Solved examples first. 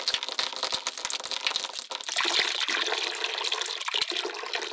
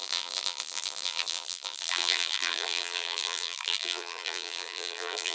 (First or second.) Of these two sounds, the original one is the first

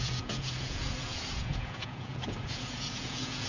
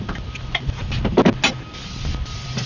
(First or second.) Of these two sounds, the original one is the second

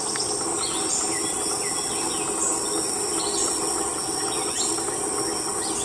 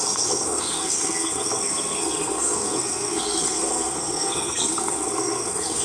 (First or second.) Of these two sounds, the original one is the first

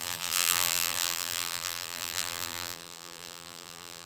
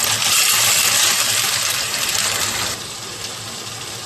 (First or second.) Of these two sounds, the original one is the second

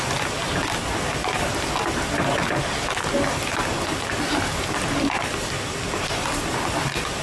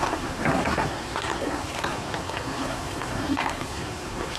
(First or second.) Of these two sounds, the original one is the first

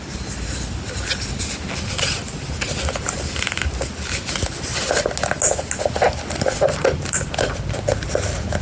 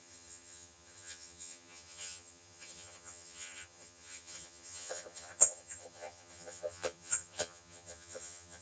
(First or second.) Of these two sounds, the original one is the first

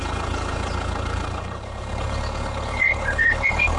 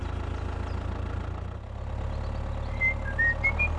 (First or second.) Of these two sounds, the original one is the second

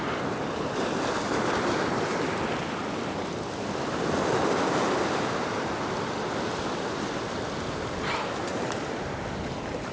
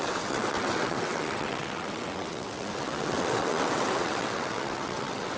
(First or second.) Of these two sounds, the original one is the first